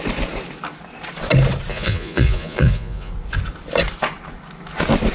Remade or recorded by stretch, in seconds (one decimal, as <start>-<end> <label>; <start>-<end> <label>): 0.0-1.7 recorded; 1.7-3.1 remade; 3.1-5.1 recorded